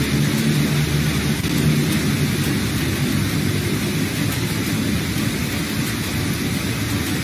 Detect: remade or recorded recorded